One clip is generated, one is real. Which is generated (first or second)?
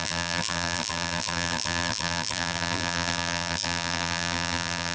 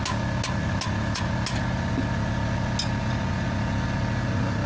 first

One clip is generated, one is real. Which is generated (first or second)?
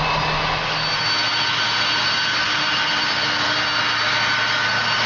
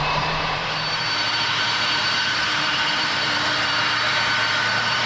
second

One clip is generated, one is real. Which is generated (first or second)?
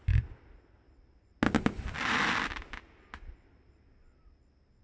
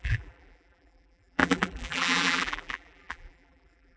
second